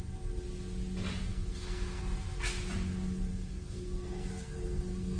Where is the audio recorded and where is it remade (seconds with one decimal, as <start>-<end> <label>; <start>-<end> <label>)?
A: 0.0-1.3 recorded; 1.3-2.0 remade; 2.0-3.3 recorded; 3.3-5.2 remade